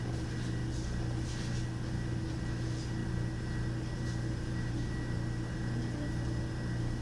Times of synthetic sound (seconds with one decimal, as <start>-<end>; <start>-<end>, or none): none